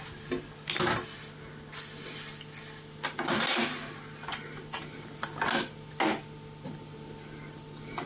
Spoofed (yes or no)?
no